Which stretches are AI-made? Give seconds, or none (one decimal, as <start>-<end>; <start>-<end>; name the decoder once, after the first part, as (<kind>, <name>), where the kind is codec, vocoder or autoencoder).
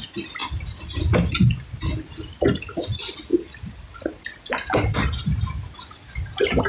3.3-4.2 (vocoder, BigVGAN v2)